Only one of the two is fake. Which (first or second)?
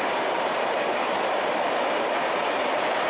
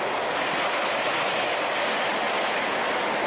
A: first